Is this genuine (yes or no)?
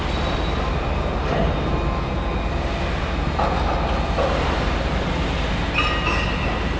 yes